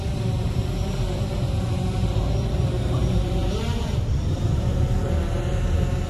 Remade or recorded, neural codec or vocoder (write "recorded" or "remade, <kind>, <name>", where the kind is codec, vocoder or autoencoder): remade, vocoder, BigVGAN v2